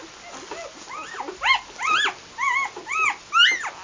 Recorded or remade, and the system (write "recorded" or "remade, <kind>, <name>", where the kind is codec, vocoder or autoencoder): recorded